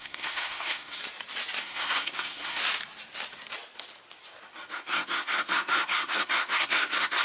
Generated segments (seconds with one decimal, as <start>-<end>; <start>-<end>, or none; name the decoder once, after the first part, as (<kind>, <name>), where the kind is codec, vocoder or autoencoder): 0.0-1.0 (codec, SNAC); 1.6-2.6; 4.7-7.2